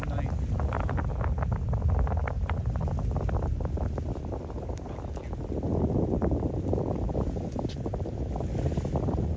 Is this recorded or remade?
recorded